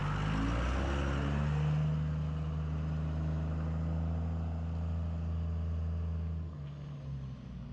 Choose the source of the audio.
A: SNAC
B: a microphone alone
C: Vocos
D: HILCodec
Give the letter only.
B